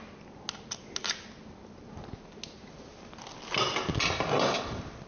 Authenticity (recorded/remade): recorded